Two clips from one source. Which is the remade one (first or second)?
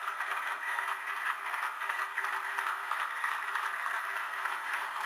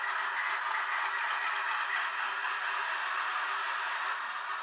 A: first